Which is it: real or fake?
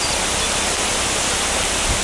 real